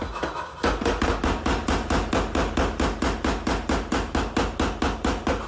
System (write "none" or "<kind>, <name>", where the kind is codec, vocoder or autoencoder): none